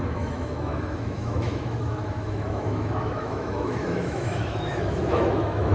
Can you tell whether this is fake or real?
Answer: fake